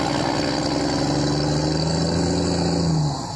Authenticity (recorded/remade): recorded